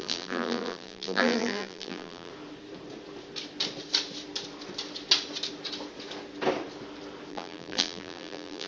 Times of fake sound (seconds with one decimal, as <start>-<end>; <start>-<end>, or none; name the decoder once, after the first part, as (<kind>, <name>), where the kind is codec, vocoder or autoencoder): 0.0-2.3 (vocoder, BigVGAN v2); 7.3-8.7